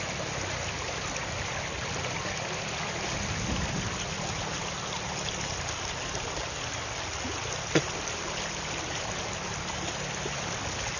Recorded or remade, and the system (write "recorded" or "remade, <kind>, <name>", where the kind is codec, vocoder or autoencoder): recorded